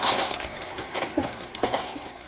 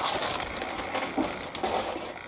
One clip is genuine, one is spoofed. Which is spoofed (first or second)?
first